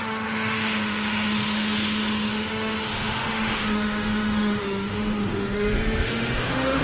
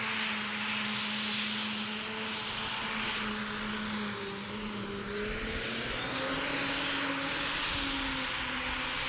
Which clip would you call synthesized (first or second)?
first